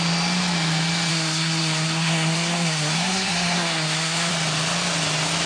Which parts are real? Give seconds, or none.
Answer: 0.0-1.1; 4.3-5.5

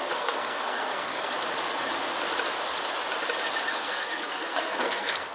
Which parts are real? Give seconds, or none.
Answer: 1.3-3.7